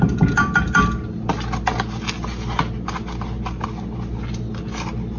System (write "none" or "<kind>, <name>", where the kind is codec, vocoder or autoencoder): none